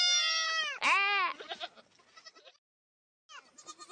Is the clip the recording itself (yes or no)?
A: yes